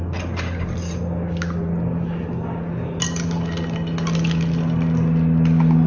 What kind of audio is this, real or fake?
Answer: real